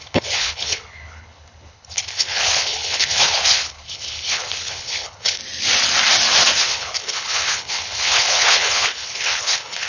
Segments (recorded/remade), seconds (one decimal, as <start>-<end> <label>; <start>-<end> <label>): 0.0-5.4 remade; 5.4-6.6 recorded; 6.6-9.9 remade